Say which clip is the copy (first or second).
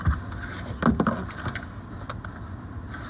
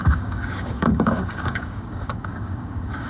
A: second